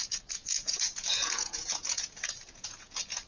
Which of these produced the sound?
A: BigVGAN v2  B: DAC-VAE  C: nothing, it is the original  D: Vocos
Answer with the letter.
D